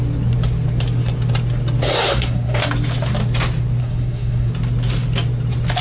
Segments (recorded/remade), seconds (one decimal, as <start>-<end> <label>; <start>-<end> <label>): 0.0-2.1 recorded; 2.1-2.6 remade; 2.6-3.8 recorded; 3.8-4.5 remade; 4.5-5.8 recorded